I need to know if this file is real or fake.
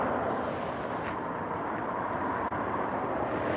real